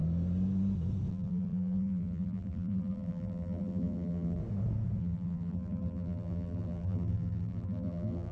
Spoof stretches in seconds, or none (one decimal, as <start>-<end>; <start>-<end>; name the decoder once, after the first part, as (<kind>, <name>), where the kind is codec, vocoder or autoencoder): 1.1-4.4 (vocoder, BigVGAN v2); 5.0-8.3